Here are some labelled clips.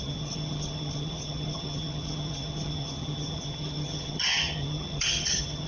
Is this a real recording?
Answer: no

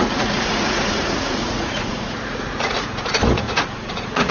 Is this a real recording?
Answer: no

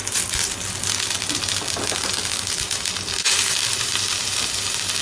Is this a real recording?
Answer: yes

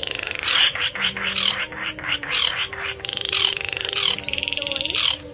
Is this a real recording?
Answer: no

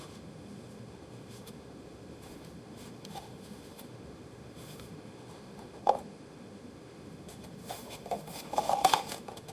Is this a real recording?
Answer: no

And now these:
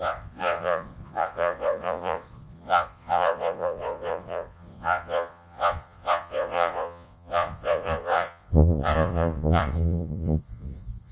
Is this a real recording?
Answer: no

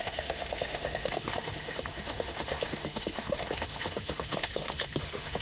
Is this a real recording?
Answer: no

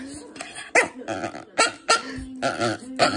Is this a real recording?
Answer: yes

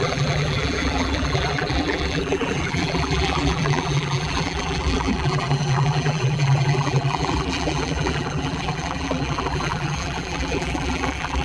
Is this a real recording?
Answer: no